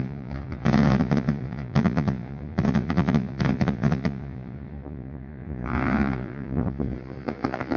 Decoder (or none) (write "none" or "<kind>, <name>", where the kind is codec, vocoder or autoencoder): vocoder, Vocos